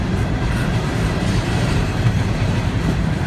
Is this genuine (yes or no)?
no